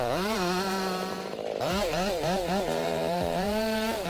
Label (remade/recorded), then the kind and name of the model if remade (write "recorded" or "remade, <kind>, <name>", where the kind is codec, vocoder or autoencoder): remade, vocoder, BigVGAN v2